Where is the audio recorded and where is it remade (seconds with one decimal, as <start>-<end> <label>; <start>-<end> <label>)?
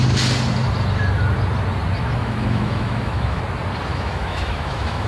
0.0-2.2 recorded; 2.2-3.4 remade; 3.4-3.9 recorded; 3.9-5.1 remade